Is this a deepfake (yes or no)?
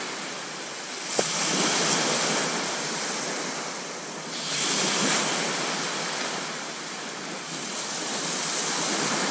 no